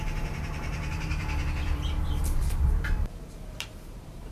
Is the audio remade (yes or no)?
yes